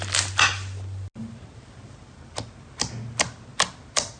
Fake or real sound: real